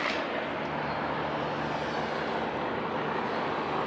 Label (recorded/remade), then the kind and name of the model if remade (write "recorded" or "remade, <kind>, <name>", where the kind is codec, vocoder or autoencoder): recorded